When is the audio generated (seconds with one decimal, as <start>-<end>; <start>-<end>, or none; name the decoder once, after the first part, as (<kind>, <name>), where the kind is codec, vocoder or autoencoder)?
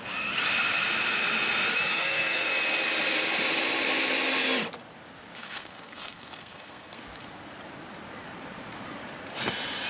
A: 1.9-2.5 (codec, SNAC); 5.4-7.0